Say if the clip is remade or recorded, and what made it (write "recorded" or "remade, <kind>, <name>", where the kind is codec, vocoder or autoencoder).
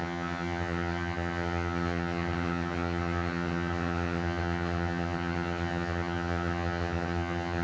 remade, vocoder, HiFi-GAN